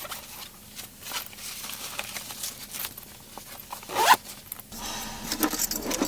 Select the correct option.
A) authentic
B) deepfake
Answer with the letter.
A